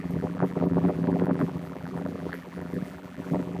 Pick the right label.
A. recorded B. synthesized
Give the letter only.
B